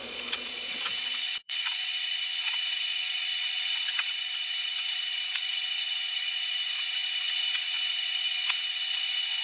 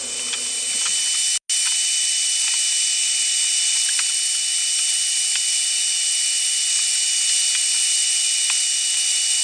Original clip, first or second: second